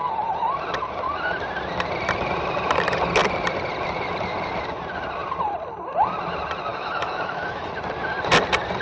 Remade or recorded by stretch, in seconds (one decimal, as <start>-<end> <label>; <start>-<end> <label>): 0.0-6.7 recorded; 6.7-7.7 remade; 7.7-8.8 recorded

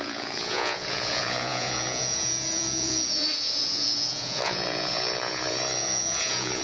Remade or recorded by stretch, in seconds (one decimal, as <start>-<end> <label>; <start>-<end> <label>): 0.0-6.6 remade